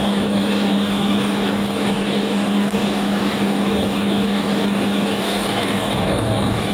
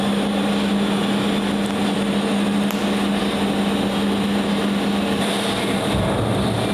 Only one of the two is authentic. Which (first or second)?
second